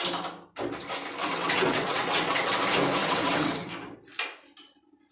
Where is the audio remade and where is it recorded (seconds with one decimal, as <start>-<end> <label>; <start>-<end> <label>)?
0.0-1.2 recorded; 1.2-2.5 remade; 2.5-3.0 recorded; 3.0-3.7 remade; 3.7-5.1 recorded